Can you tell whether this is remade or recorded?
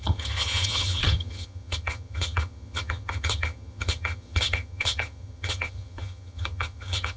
remade